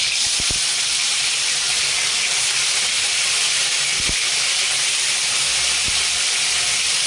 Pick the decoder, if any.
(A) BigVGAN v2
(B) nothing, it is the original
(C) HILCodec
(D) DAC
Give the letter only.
B